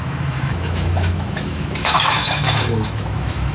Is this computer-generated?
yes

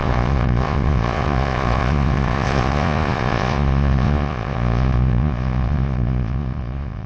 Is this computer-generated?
yes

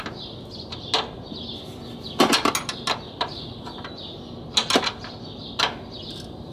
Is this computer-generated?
no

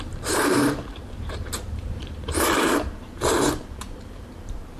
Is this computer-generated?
yes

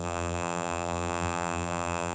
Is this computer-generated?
yes